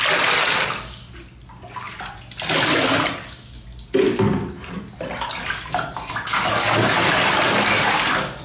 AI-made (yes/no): no